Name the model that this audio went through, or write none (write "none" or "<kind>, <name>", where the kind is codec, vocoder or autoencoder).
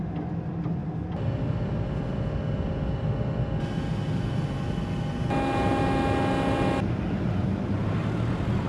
none